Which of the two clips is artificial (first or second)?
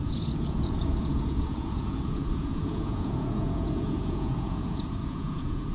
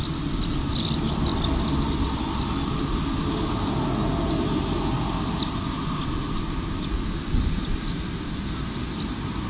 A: first